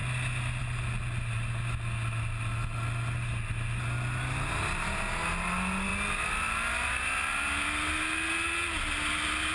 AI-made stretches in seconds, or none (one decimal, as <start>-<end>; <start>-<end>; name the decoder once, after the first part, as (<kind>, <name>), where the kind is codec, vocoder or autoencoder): none